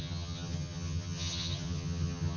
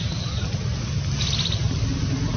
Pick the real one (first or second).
second